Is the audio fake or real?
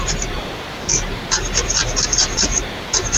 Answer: fake